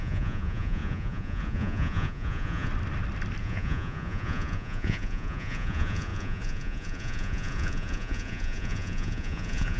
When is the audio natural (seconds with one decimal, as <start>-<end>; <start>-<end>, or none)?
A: 2.7-3.4